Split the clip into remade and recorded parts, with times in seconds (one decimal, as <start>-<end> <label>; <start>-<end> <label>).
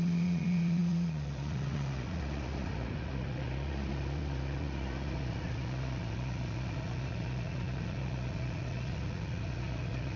0.0-10.2 remade